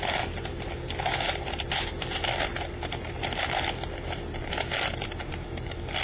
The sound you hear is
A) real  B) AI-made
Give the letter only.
B